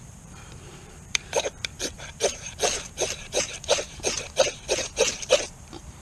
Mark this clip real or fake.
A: fake